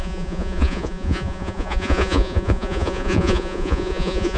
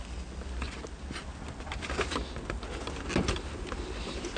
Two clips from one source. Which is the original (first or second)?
second